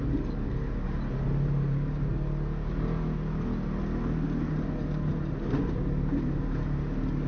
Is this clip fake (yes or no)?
no